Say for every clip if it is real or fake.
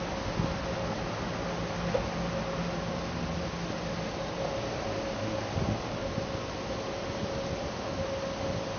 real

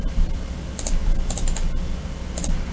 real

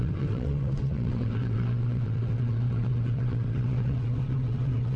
fake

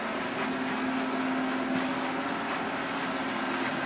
real